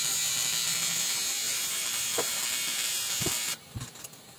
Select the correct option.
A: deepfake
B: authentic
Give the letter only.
B